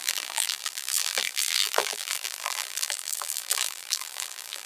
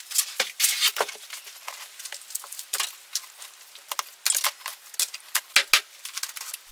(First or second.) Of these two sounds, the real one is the second